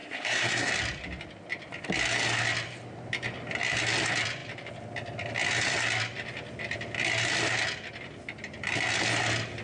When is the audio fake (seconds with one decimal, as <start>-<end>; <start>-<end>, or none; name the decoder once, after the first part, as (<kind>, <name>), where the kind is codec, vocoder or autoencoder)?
0.0-0.7 (codec, SNAC)